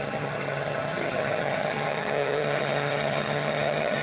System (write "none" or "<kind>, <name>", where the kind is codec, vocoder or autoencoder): vocoder, HiFi-GAN